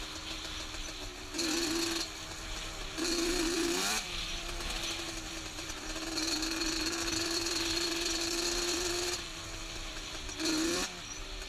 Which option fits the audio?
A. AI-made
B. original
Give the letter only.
A